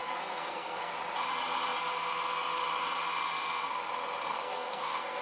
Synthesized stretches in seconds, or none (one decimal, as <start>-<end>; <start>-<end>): 0.0-0.9; 4.3-5.2